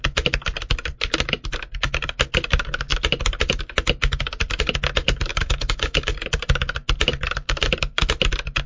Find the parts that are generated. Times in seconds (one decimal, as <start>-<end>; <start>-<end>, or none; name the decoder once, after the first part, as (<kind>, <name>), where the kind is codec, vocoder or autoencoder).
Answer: 5.3-6.1 (autoencoder, DAC-VAE)